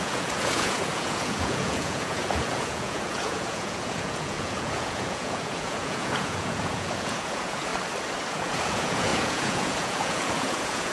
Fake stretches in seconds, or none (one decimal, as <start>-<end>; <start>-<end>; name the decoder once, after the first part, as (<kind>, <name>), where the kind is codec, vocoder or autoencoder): 0.0-7.7 (vocoder, Vocos); 8.3-10.9